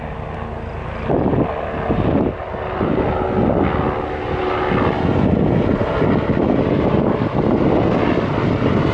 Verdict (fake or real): real